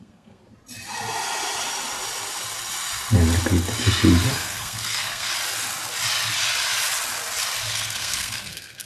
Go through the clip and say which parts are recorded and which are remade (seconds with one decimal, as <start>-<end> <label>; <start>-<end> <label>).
0.0-0.4 remade; 0.4-4.3 recorded; 4.3-5.3 remade; 5.3-7.7 recorded; 7.7-8.9 remade